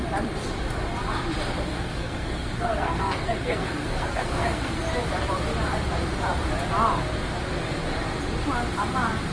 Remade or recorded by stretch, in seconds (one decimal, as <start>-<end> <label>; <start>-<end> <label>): 0.0-1.7 recorded; 1.7-4.8 remade; 4.8-9.3 recorded